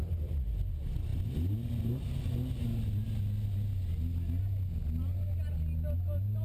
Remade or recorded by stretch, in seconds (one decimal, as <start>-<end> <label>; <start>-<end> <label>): 0.0-0.7 remade; 0.7-6.4 recorded